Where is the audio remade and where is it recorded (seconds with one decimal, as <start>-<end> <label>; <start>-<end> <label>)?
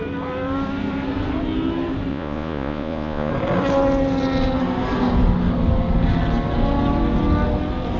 0.0-2.1 recorded; 2.1-3.3 remade; 3.3-8.0 recorded